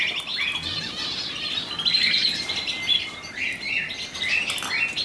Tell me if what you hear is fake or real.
real